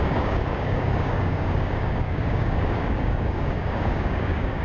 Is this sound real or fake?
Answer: fake